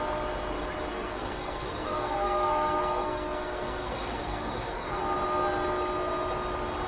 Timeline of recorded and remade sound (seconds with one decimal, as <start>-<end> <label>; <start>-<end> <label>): 0.0-0.9 recorded; 0.9-5.0 remade; 5.0-6.9 recorded